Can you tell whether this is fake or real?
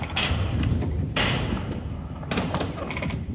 fake